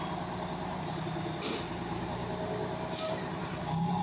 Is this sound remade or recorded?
recorded